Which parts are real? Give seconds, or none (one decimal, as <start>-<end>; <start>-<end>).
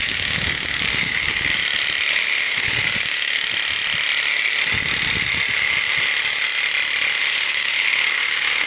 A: 1.5-2.1; 3.5-7.2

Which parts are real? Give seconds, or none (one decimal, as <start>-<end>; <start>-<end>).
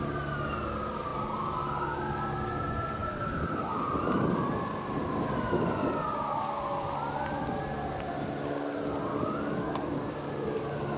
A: 0.0-9.1; 10.1-11.0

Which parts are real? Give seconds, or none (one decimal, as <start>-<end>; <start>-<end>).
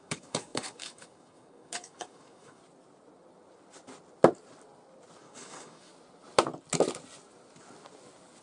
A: 2.6-5.2; 5.9-8.4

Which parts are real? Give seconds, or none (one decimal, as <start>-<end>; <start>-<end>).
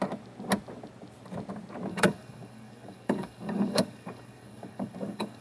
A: 0.0-1.9